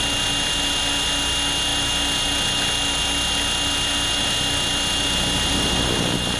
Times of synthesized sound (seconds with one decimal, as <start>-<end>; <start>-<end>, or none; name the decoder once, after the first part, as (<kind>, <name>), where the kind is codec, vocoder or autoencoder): none